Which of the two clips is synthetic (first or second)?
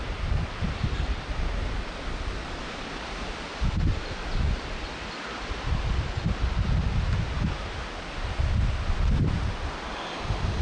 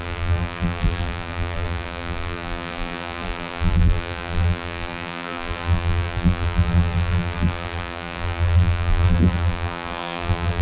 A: second